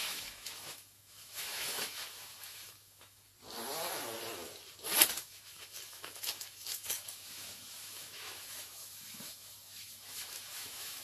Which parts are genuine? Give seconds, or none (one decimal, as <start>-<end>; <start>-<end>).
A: 3.3-5.2